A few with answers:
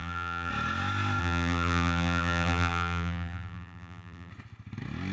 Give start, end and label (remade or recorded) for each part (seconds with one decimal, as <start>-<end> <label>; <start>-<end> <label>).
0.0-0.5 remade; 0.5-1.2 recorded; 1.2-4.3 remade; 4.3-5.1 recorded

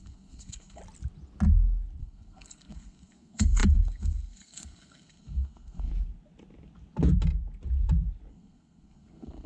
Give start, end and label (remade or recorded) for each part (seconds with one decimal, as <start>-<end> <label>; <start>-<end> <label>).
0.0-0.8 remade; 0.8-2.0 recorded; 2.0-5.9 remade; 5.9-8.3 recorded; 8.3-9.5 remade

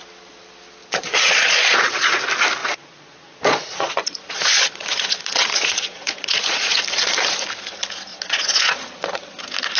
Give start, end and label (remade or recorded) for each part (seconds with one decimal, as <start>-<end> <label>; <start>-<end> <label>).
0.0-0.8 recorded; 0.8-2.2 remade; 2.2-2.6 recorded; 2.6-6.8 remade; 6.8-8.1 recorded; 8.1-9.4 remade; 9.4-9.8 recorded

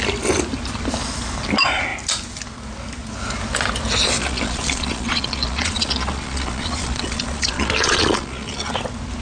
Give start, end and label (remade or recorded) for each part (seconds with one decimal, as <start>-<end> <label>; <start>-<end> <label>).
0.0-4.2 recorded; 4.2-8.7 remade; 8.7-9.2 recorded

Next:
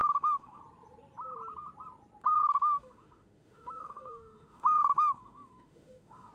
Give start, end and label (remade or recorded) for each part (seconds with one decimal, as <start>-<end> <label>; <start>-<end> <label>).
0.0-0.6 remade; 0.6-2.4 recorded; 2.4-6.3 remade

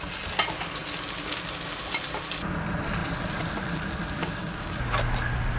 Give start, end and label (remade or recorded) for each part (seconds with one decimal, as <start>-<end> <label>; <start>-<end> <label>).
0.0-4.2 recorded; 4.2-5.0 remade; 5.0-5.6 recorded